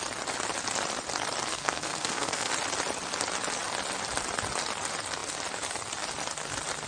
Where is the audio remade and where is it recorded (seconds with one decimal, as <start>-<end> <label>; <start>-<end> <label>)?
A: 0.0-1.5 recorded; 1.5-2.5 remade; 2.5-6.9 recorded